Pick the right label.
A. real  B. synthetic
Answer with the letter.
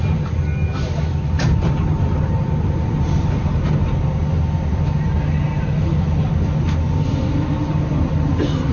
A